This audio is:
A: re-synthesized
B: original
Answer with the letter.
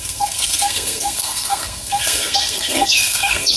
A